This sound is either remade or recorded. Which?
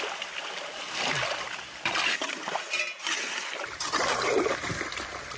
recorded